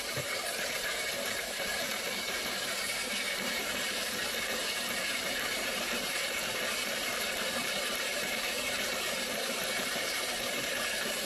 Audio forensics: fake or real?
fake